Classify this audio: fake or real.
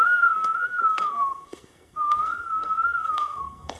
fake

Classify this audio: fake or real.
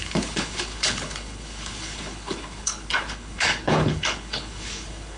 fake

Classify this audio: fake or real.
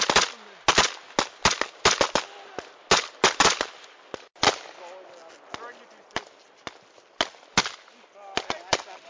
real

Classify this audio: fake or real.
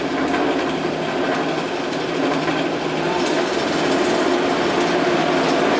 real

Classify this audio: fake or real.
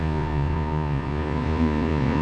fake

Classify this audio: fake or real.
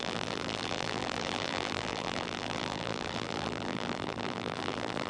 fake